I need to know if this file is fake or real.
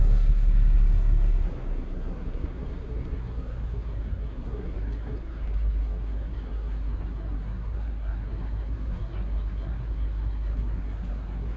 fake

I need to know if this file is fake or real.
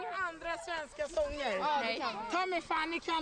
real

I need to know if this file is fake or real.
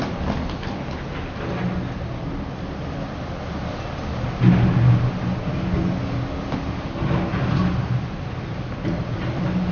real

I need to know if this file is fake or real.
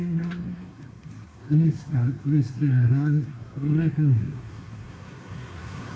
fake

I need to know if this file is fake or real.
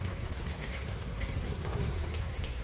fake